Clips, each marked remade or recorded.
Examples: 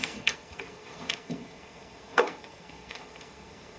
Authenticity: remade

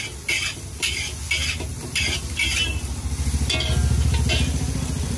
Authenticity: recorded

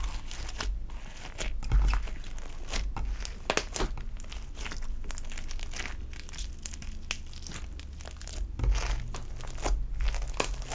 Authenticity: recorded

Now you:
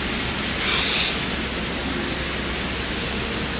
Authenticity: recorded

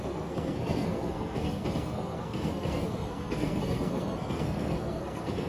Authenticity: remade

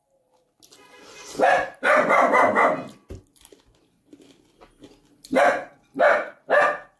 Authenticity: recorded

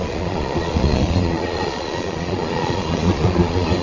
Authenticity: remade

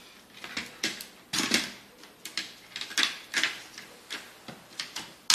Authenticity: recorded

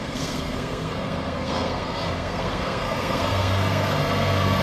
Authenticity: remade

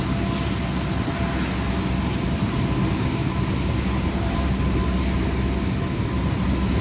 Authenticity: recorded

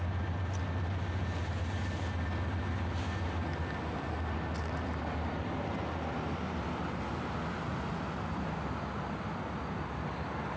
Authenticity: recorded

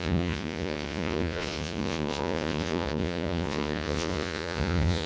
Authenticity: remade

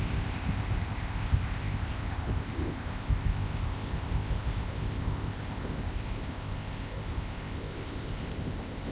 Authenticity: remade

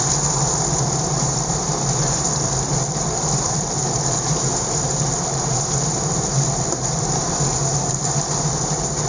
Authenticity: remade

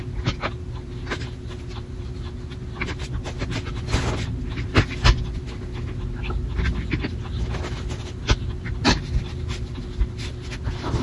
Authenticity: recorded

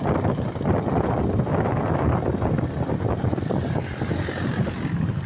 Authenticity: recorded